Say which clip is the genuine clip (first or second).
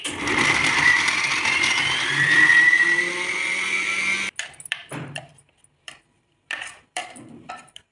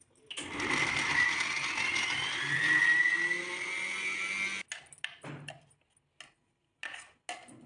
second